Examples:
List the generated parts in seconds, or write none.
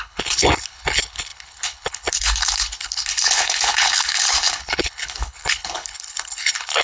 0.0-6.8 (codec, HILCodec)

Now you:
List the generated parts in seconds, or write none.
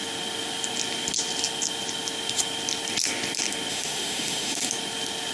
3.7-4.7 (autoencoder, DAC-VAE)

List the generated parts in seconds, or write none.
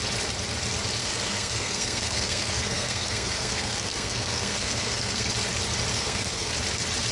1.0-5.3 (codec, SNAC); 5.9-6.5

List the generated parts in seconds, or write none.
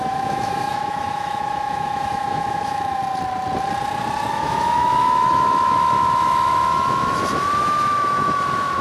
0.0-3.0 (autoencoder, DAC-VAE); 4.3-8.8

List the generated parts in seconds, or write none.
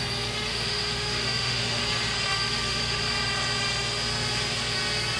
0.5-1.8 (autoencoder, DAC-VAE); 2.3-3.0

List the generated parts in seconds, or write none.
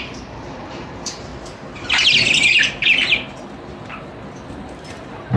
0.0-1.3 (vocoder, BigVGAN v2); 4.5-5.4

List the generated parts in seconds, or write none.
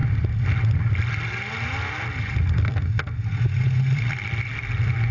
none